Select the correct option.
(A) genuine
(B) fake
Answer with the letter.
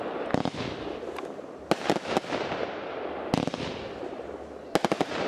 A